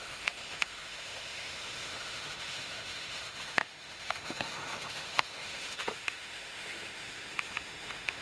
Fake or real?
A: fake